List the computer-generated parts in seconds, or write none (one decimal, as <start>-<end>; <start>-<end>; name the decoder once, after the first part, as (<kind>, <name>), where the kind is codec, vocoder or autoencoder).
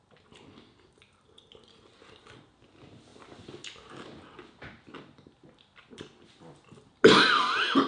none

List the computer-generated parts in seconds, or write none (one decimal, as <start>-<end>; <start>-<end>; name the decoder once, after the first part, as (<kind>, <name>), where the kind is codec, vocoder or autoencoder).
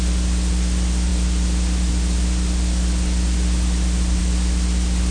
none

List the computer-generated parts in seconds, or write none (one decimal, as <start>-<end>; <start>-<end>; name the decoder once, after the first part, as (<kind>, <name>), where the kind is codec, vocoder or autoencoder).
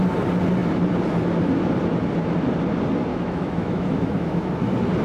3.1-4.6 (autoencoder, DAC-VAE)